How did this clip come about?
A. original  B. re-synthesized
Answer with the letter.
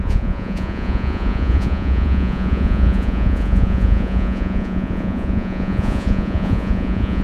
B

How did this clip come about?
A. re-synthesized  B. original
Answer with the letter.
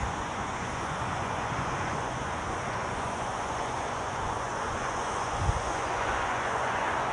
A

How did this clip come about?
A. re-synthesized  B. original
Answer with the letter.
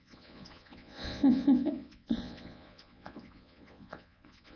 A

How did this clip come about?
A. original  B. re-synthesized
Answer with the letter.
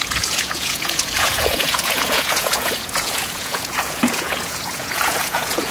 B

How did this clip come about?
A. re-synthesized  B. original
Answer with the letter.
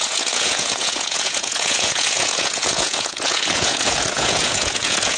A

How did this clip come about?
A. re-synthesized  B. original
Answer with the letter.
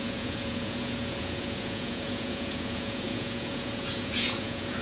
A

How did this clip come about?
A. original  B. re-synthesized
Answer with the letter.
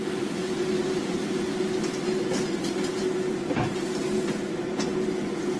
A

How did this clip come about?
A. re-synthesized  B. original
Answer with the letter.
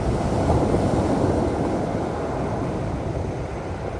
B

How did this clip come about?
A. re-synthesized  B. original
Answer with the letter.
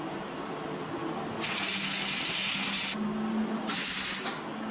B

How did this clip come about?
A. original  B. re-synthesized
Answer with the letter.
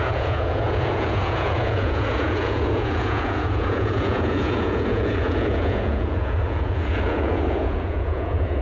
B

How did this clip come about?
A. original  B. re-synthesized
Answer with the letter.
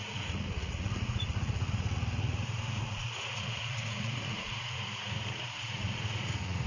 B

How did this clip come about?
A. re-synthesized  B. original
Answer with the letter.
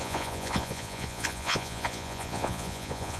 A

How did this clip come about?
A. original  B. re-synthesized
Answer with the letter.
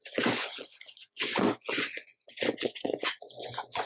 B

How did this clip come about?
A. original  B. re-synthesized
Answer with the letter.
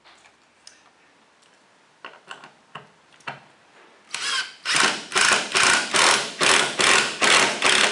A